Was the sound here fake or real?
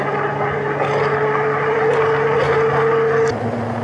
real